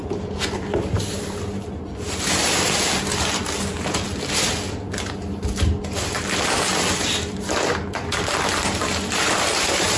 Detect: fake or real real